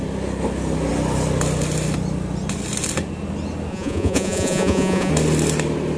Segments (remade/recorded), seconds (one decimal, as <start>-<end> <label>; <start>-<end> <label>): 0.0-3.7 recorded; 3.7-5.1 remade; 5.1-6.0 recorded